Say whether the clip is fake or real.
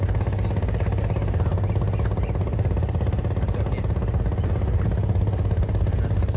real